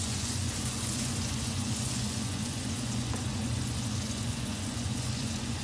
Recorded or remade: remade